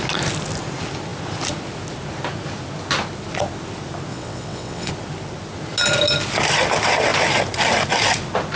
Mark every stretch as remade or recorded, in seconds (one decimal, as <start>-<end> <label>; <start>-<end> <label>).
0.0-4.1 recorded; 4.1-4.9 remade; 4.9-8.6 recorded